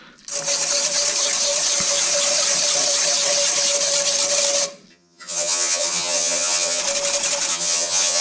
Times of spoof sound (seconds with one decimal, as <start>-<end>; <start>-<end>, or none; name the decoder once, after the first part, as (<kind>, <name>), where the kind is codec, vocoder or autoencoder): 4.9-6.8 (vocoder, HiFi-GAN); 7.5-8.2